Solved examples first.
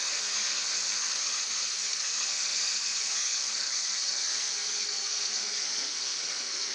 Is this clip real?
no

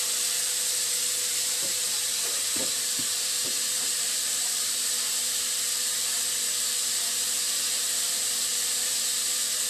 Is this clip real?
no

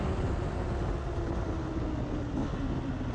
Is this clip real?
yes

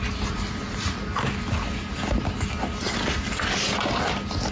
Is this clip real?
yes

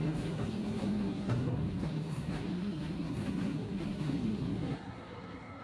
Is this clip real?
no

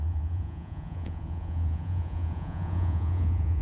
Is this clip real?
no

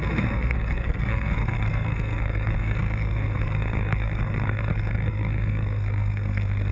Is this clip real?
no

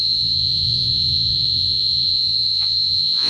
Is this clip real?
no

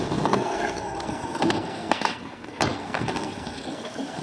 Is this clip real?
no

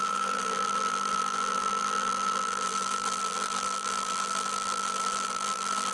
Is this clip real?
no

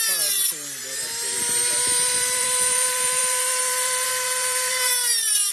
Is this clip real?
no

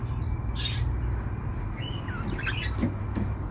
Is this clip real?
yes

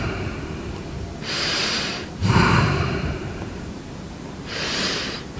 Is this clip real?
no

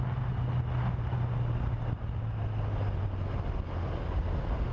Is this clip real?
yes